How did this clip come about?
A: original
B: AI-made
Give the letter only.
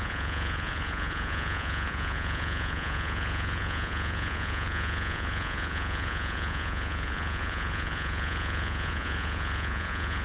B